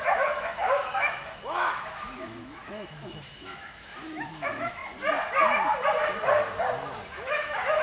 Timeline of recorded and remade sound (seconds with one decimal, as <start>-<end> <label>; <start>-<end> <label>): 0.0-4.8 remade; 4.8-7.1 recorded; 7.1-7.8 remade